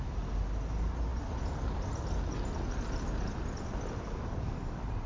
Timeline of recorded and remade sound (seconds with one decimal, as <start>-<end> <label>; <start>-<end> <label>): 0.0-5.1 recorded